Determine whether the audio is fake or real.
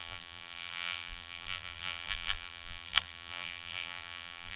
fake